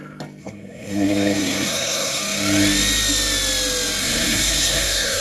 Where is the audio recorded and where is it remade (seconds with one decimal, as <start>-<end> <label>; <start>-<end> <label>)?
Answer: 0.0-0.4 recorded; 0.4-2.2 remade; 2.2-4.0 recorded; 4.0-5.2 remade